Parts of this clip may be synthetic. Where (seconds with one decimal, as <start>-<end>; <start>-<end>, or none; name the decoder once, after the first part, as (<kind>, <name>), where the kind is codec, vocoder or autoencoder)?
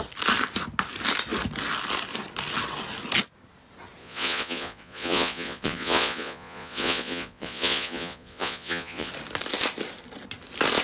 4.0-9.1 (vocoder, Vocos)